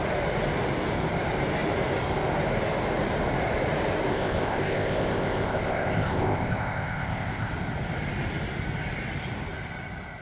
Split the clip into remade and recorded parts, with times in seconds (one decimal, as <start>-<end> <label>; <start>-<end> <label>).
0.0-4.1 recorded; 4.1-7.5 remade; 7.5-10.2 recorded